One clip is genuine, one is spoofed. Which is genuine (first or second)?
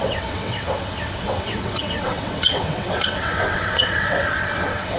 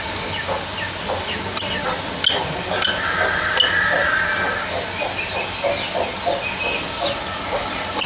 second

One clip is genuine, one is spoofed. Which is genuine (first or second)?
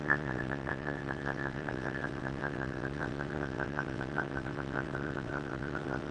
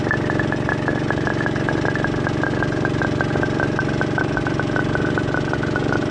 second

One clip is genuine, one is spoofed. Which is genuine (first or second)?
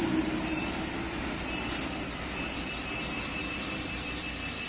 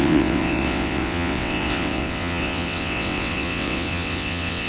first